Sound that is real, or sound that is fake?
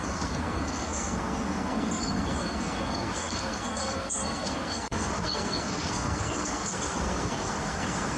fake